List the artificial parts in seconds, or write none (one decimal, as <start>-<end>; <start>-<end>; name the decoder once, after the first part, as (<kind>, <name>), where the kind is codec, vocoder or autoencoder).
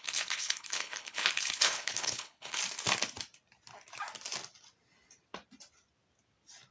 0.0-2.6 (codec, HILCodec)